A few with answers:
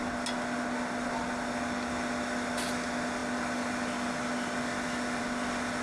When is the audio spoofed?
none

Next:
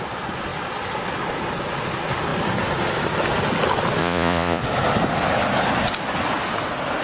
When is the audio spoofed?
4.0-4.6 (vocoder, Vocos)

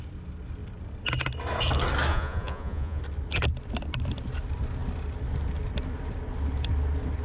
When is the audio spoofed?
2.1-3.0 (vocoder, Vocos)

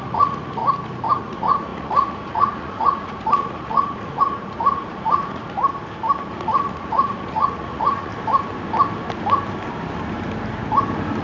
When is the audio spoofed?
0.0-0.6 (vocoder, Vocos); 1.2-5.6; 6.3-8.1

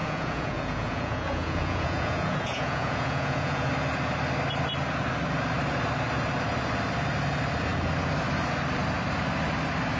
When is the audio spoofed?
0.0-3.7 (vocoder, Vocos)

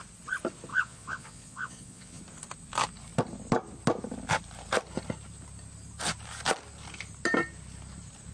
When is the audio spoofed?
0.7-2.2 (vocoder, Vocos)

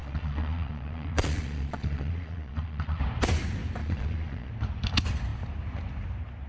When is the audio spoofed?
0.0-3.0 (vocoder, Vocos); 3.8-4.5